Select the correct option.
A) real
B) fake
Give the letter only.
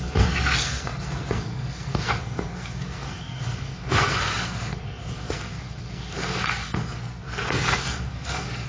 B